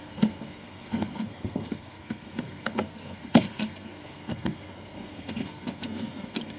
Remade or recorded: remade